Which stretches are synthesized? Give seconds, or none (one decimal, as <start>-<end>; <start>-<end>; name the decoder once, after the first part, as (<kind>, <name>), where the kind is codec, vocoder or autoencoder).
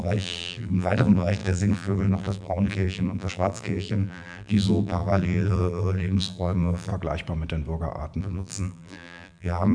0.0-6.9 (vocoder, BigVGAN v2); 8.2-9.7